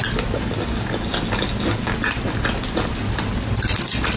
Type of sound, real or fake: real